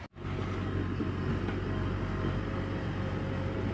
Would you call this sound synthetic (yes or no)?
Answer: no